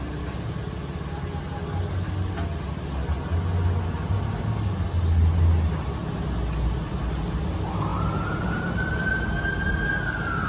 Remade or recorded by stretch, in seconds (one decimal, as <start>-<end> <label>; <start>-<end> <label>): 0.0-10.5 recorded